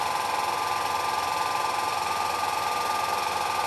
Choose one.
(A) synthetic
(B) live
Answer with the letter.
B